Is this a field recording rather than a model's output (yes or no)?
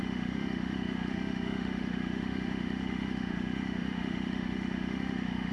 no